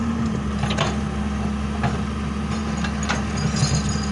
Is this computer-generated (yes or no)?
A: no